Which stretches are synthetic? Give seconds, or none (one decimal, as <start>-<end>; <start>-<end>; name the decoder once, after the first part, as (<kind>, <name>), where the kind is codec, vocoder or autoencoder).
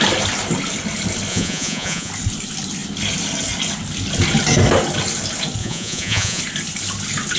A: 1.3-2.1 (vocoder, Vocos); 5.6-6.4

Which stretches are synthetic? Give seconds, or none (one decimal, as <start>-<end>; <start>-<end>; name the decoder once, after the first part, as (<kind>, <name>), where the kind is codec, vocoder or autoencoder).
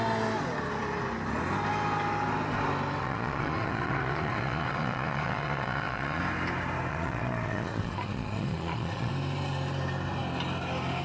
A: 3.0-6.2 (vocoder, Vocos); 6.9-9.1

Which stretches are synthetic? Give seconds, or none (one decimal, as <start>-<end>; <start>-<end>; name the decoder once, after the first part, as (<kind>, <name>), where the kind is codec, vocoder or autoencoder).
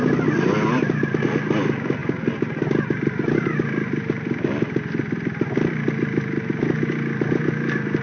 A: none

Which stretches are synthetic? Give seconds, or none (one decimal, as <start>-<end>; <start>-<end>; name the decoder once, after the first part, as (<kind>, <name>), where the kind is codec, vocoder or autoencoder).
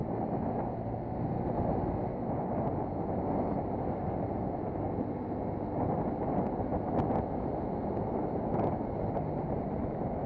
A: none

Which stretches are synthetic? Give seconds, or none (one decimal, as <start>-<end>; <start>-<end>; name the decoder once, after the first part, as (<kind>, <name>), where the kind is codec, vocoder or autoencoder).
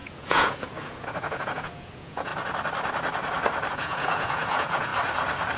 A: 0.0-2.3 (vocoder, Vocos); 3.7-4.9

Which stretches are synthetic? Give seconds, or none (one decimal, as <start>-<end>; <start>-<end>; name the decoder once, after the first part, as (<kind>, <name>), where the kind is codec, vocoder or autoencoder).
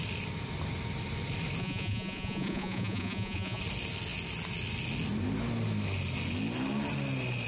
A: 1.6-3.6 (vocoder, Vocos)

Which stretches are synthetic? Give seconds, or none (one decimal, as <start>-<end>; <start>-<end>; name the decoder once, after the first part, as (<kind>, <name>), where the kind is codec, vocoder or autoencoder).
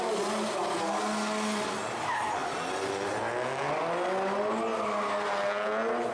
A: none